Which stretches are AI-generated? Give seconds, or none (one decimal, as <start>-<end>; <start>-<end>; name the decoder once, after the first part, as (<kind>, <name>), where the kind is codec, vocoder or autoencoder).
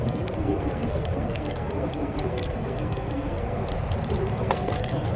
0.0-3.6 (codec, SNAC); 4.3-5.2